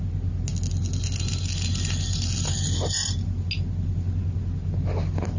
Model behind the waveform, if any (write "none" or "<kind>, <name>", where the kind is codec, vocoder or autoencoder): none